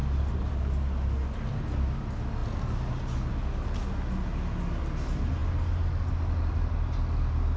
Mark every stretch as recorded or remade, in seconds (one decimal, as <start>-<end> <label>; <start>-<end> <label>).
0.0-7.6 recorded